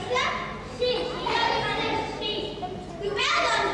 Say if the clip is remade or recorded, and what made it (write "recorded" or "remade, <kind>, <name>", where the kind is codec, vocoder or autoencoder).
recorded